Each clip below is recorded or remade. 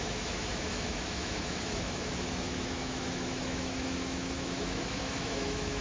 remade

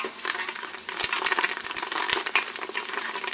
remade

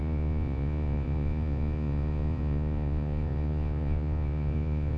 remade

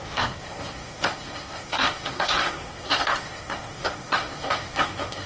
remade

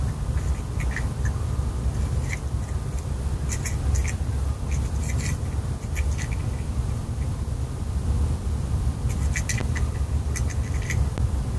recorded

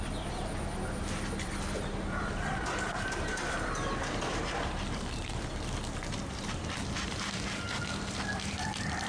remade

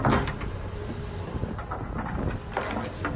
recorded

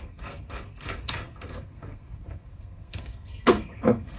remade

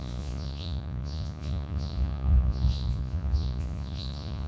remade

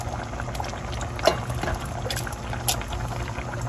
recorded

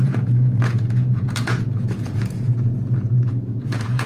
remade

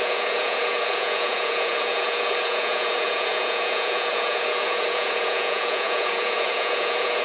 remade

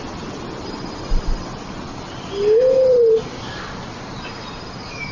recorded